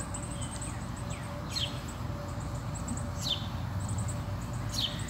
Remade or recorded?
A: recorded